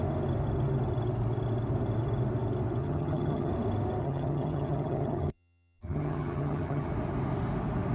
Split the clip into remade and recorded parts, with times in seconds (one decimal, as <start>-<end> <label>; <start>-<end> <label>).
0.0-2.8 recorded; 2.8-3.5 remade; 3.5-4.0 recorded; 4.0-6.9 remade; 6.9-7.9 recorded